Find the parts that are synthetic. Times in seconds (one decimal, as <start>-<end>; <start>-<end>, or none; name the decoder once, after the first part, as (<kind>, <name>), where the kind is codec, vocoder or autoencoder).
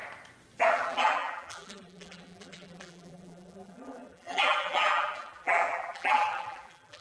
0.7-7.0 (vocoder, BigVGAN v2)